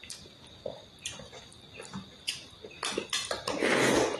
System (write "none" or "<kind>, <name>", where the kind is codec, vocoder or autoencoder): vocoder, BigVGAN v2